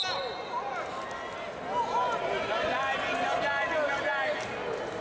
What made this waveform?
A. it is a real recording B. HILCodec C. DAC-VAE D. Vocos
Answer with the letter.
A